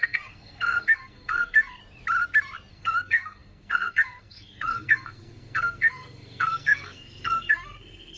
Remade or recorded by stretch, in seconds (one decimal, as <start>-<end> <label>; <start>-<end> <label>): 0.0-1.8 remade; 1.8-2.7 recorded; 2.7-8.2 remade